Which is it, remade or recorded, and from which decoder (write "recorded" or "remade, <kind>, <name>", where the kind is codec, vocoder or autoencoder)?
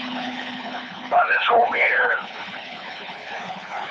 remade, codec, HILCodec